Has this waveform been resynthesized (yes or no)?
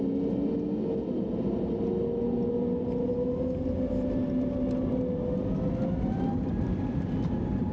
no